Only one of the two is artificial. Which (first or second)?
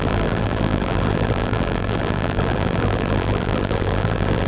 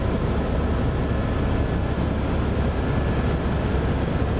first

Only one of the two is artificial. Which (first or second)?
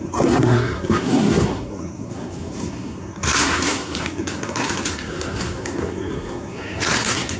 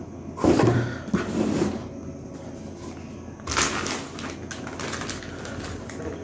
first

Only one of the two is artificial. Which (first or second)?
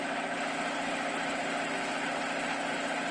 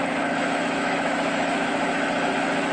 second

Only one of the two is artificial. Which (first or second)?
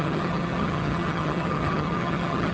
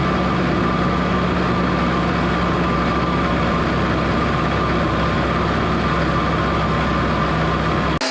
first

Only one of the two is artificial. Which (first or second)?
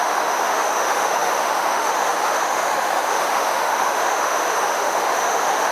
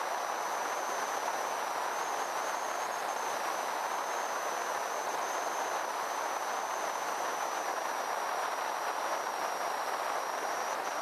first